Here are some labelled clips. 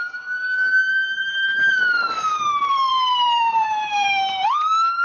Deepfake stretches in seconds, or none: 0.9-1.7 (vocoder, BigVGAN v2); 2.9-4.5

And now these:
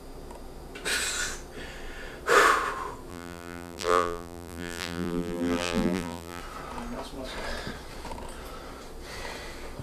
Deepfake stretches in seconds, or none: 3.1-6.4 (vocoder, BigVGAN v2)

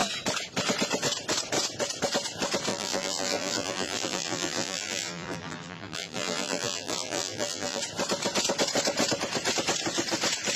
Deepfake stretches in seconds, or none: 2.7-7.8 (vocoder, BigVGAN v2)